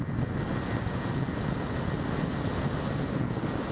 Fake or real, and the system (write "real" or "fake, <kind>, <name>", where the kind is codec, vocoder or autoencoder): real